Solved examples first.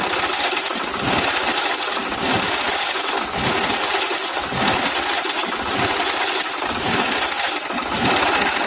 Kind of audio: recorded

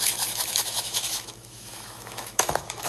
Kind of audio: remade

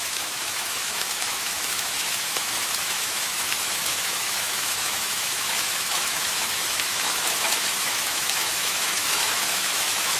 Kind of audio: remade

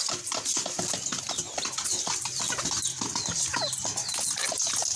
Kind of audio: recorded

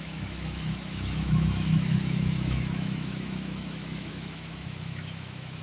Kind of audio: remade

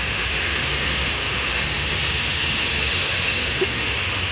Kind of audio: remade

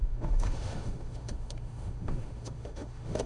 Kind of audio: remade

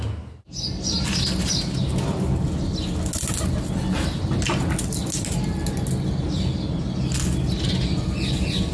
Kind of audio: recorded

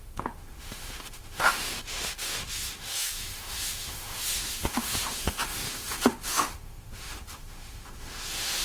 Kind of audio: remade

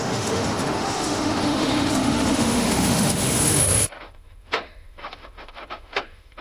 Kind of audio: remade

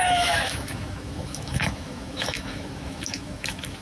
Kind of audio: remade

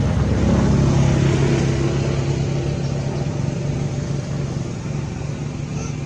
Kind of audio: recorded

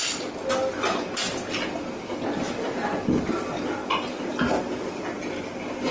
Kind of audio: recorded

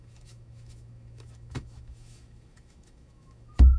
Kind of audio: remade